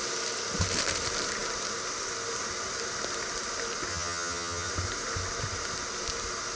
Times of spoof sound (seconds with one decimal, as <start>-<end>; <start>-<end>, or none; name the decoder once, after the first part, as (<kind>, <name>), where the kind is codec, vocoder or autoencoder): 3.9-4.7 (vocoder, HiFi-GAN)